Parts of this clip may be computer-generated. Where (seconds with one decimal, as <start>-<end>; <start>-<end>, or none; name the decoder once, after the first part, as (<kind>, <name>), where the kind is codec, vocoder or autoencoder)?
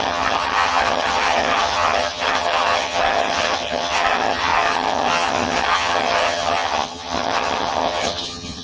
0.0-8.6 (vocoder, HiFi-GAN)